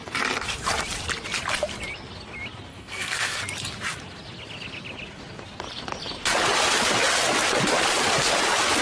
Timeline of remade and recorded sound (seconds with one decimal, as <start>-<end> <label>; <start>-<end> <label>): 0.0-2.7 recorded; 2.7-3.4 remade; 3.4-8.8 recorded